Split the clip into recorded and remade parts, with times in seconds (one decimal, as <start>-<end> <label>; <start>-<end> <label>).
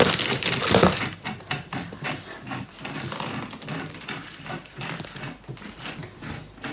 0.0-6.0 remade; 6.0-6.7 recorded